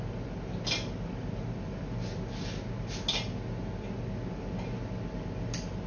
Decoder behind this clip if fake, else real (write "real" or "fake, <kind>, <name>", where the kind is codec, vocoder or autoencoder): real